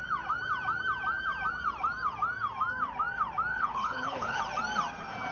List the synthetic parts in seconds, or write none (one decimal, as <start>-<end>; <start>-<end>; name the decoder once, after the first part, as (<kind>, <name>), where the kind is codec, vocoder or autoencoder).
3.5-4.4 (codec, HILCodec)

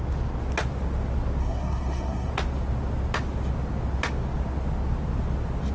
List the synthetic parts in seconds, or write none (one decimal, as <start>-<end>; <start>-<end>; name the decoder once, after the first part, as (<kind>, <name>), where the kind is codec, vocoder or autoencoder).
1.4-2.3 (codec, SNAC)